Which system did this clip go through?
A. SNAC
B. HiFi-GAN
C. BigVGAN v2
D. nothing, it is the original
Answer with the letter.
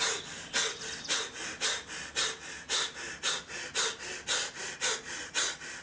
D